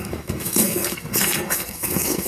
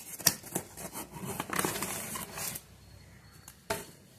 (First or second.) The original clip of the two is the second